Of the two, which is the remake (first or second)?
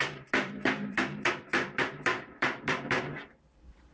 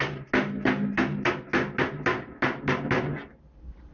first